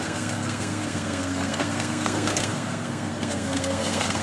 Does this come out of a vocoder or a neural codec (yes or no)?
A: yes